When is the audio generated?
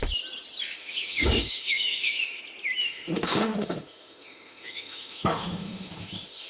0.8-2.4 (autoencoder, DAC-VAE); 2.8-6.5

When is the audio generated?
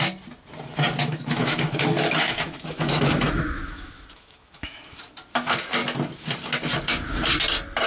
1.0-5.0 (autoencoder, DAC-VAE)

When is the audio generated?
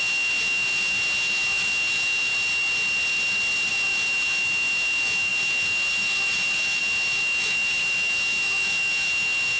0.0-2.3 (autoencoder, DAC-VAE); 3.7-9.6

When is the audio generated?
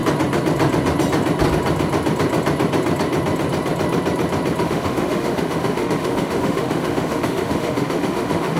4.6-8.6 (autoencoder, DAC-VAE)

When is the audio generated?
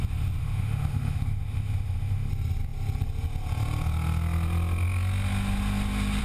0.4-2.3 (autoencoder, DAC-VAE)